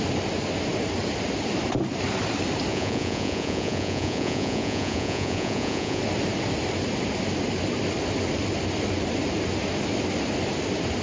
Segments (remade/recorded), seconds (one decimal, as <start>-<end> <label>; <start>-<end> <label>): 0.0-2.7 recorded; 2.7-6.0 remade; 6.0-11.0 recorded